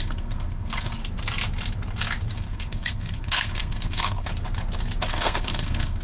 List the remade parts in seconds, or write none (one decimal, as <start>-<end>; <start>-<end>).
0.0-1.0; 2.3-4.3; 5.1-6.0